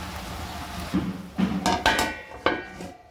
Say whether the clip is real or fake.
real